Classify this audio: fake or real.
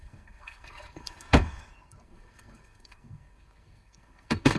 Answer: fake